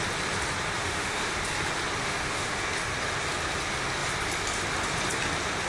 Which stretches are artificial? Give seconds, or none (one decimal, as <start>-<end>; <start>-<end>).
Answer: 0.8-1.3; 2.0-2.6